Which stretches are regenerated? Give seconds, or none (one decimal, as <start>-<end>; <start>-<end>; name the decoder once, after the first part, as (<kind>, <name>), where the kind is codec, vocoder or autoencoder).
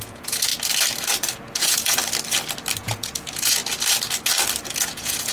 0.0-0.5 (vocoder, Vocos); 1.3-2.0; 2.8-3.6; 4.6-5.3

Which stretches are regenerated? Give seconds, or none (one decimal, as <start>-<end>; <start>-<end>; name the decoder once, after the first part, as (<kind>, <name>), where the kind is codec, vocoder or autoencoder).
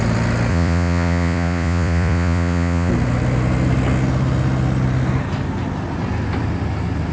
0.5-2.9 (vocoder, Vocos)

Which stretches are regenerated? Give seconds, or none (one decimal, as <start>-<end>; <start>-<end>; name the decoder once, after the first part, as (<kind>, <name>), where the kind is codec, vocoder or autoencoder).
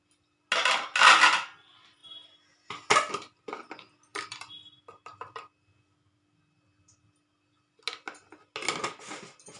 4.1-4.6 (vocoder, BigVGAN v2)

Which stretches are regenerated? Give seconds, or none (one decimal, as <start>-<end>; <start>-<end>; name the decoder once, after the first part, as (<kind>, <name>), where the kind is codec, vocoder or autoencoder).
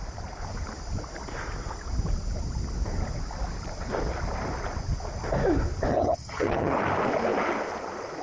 5.9-6.7 (vocoder, HiFi-GAN)